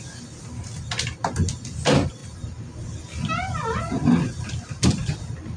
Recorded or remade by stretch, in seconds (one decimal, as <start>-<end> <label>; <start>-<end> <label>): 0.0-5.6 recorded